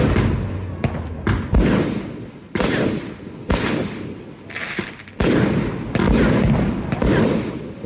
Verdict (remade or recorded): recorded